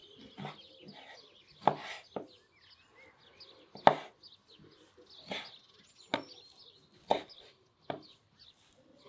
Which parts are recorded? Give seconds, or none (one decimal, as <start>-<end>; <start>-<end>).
0.0-9.1